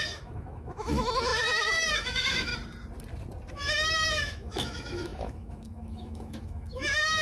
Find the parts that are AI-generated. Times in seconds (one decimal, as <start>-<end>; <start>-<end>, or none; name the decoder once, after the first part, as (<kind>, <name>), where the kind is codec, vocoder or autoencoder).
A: 0.0-2.5 (autoencoder, DAC-VAE); 3.5-7.2